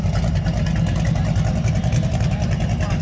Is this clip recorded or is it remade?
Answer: recorded